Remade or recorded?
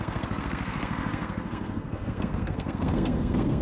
remade